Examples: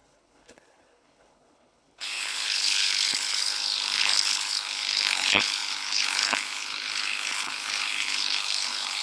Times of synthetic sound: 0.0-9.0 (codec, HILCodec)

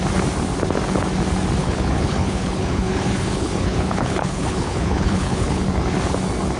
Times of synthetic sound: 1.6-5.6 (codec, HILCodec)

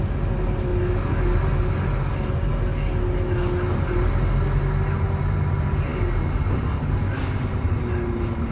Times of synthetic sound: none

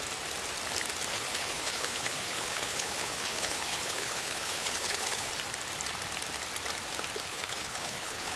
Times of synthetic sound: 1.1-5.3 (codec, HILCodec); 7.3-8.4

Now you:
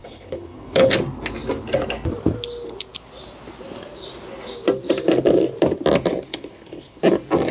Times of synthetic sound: 0.0-0.9 (codec, HILCodec); 6.3-7.0

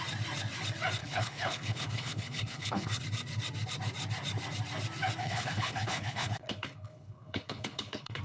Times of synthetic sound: 1.0-3.0 (codec, HILCodec); 5.2-8.2